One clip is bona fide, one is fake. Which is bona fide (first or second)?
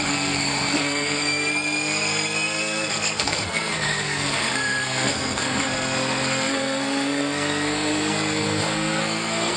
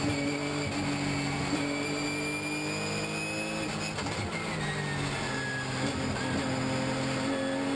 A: second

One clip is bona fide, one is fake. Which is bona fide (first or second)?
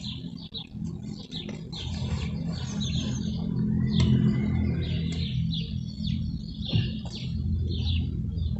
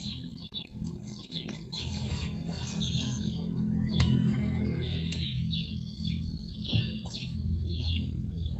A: first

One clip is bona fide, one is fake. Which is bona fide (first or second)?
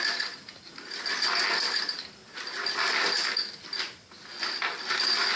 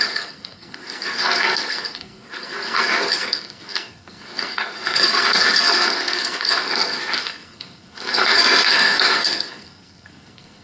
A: first